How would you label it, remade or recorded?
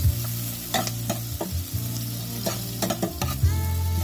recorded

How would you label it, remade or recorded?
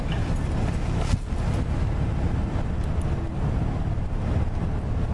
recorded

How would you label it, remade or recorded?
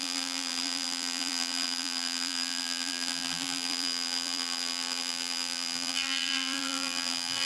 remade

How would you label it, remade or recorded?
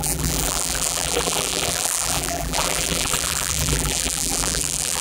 remade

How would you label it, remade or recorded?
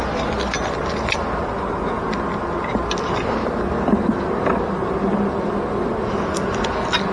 recorded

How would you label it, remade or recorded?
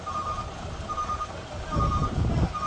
recorded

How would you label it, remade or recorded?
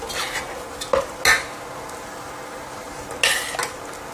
recorded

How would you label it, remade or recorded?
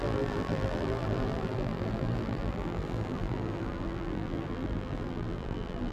remade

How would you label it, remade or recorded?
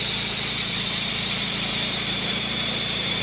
remade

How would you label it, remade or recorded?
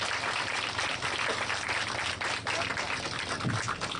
recorded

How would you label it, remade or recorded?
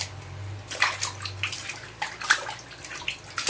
recorded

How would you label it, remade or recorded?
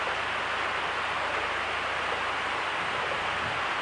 recorded